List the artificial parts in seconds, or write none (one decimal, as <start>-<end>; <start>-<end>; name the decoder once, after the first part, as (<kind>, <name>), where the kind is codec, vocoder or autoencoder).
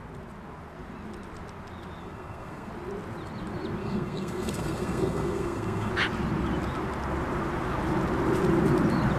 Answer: 2.0-2.7 (codec, SNAC); 3.8-5.9